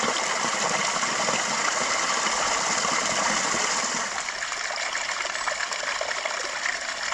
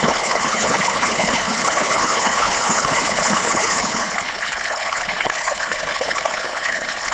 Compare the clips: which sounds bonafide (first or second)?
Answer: first